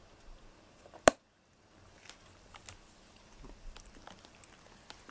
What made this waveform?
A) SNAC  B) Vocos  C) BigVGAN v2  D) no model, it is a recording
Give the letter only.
D